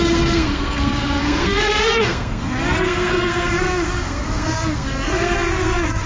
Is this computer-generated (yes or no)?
yes